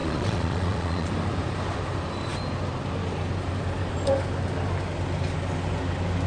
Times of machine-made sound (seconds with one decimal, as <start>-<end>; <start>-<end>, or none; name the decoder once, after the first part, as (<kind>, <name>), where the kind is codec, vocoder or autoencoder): 0.0-1.1 (vocoder, Vocos)